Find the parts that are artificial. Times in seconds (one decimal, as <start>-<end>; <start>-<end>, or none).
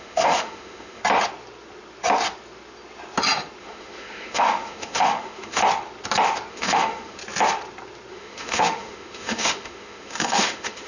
0.0-1.0; 3.6-5.6; 6.5-7.2; 8.1-10.9